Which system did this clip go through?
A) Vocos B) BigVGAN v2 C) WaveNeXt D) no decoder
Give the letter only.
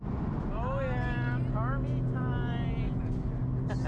D